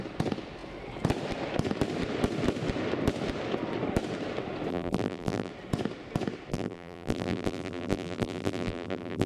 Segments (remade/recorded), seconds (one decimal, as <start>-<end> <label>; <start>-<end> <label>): 0.0-4.7 recorded; 4.7-5.5 remade; 5.5-6.5 recorded; 6.5-9.3 remade